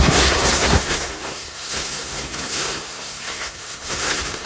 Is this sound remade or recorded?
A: remade